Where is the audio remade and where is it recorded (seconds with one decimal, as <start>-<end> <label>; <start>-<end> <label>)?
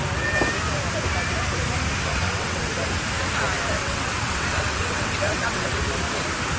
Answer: 0.0-2.1 recorded; 2.1-2.7 remade; 2.7-3.8 recorded; 3.8-5.8 remade; 5.8-6.6 recorded